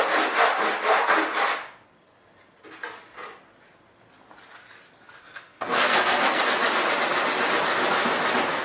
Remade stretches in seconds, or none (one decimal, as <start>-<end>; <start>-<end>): 5.2-6.4